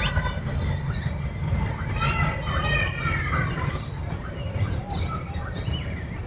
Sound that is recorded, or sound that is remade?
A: remade